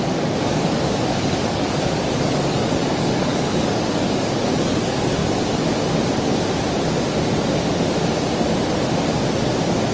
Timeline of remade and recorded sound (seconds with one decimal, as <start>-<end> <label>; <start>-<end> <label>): 0.0-5.2 remade; 5.2-9.9 recorded